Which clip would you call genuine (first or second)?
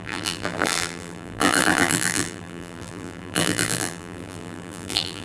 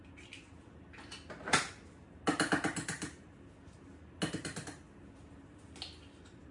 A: second